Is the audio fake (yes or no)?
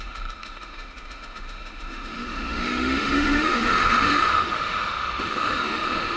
yes